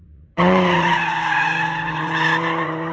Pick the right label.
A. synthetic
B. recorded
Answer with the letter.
A